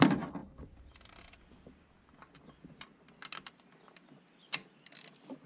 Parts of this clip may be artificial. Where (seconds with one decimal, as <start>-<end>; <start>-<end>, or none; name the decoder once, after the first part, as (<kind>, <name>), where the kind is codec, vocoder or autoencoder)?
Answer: none